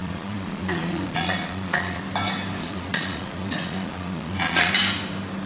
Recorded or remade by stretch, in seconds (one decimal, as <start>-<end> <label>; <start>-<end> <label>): 0.0-2.0 remade; 2.0-2.6 recorded; 2.6-4.7 remade; 4.7-5.5 recorded